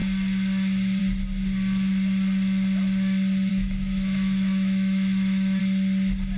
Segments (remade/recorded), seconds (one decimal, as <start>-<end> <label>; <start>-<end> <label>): 0.0-3.5 recorded; 3.5-5.6 remade; 5.6-6.4 recorded